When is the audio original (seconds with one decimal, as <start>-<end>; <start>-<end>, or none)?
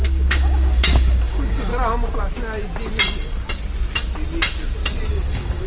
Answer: 1.7-5.1